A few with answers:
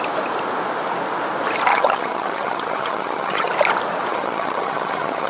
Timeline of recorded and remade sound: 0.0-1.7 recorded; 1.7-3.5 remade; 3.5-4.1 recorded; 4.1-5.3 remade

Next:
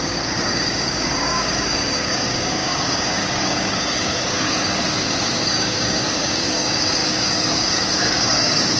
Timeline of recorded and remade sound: 0.0-8.8 remade

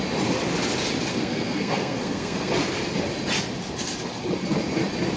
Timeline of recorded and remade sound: 0.0-1.1 recorded; 1.1-2.5 remade; 2.5-5.2 recorded

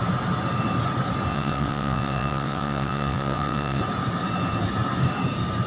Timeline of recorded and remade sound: 0.0-1.3 recorded; 1.3-3.8 remade; 3.8-5.7 recorded

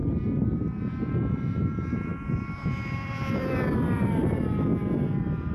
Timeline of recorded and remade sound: 0.0-0.8 recorded; 0.8-5.5 remade